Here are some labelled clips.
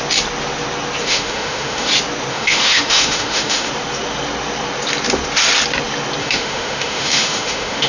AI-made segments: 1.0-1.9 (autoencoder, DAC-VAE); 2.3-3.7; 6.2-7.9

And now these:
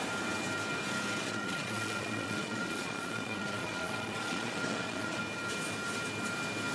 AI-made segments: 1.2-5.2 (vocoder, Vocos)

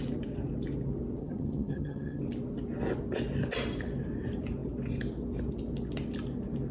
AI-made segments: 1.2-2.2 (vocoder, HiFi-GAN)

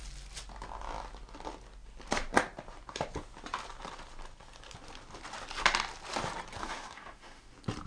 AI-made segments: 6.6-7.5 (autoencoder, DAC-VAE)

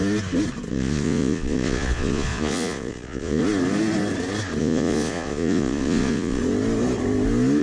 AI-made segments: 0.7-3.4 (vocoder, Vocos); 4.6-6.4

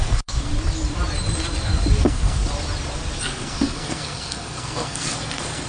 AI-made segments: 0.0-0.5 (codec, SNAC); 2.0-2.4; 3.2-5.7

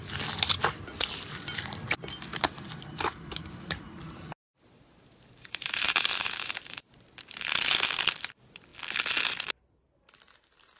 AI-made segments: 2.3-7.1 (vocoder, BigVGAN v2)